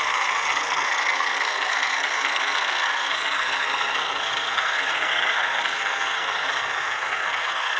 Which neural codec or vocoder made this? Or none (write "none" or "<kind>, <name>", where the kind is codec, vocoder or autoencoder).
codec, SNAC